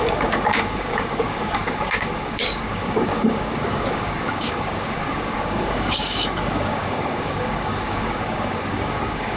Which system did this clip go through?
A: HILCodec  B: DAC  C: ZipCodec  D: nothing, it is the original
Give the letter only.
B